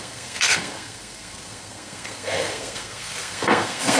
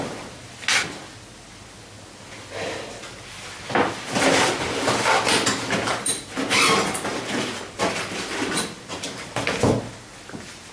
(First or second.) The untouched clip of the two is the second